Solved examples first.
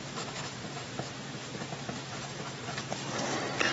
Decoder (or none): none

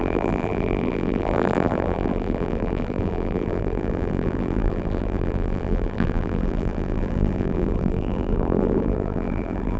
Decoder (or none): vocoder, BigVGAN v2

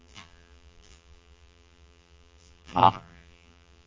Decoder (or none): vocoder, BigVGAN v2